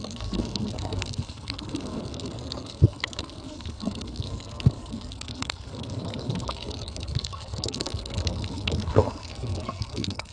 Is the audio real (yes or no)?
no